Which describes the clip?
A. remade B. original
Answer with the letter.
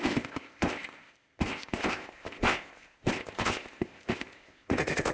A